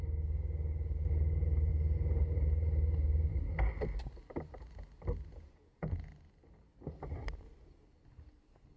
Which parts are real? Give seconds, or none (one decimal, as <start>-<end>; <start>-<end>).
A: 0.0-5.3; 6.1-8.8